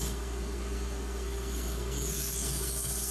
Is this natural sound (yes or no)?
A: no